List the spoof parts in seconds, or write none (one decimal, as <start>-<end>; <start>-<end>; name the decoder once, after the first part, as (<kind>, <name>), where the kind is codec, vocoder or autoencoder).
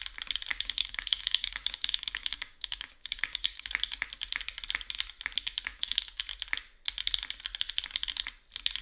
0.5-3.7 (codec, DAC); 5.7-6.2